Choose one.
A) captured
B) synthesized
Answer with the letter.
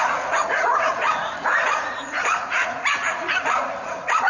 B